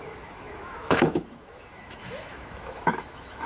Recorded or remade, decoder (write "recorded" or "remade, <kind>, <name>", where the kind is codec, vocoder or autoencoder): remade, autoencoder, DAC-VAE